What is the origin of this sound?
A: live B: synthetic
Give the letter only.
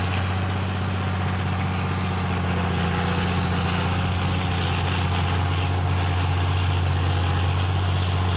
A